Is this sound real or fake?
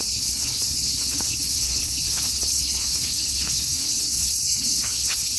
fake